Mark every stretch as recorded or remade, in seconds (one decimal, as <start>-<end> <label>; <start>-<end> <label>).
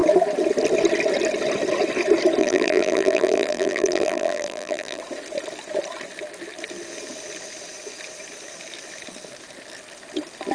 0.0-2.4 recorded; 2.4-5.0 remade; 5.0-10.5 recorded